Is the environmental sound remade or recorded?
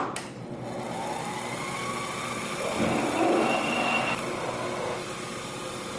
recorded